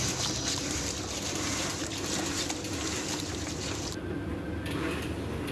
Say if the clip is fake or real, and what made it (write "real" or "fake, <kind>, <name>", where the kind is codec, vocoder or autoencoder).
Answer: real